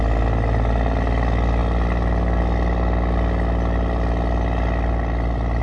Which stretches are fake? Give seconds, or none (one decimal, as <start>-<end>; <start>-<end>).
none